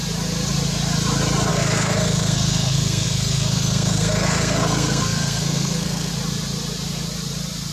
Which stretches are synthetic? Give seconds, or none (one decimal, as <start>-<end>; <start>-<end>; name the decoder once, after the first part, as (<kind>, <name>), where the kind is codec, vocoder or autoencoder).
1.5-6.1 (codec, SNAC)